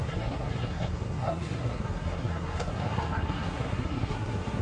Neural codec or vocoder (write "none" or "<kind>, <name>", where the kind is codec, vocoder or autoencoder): codec, SNAC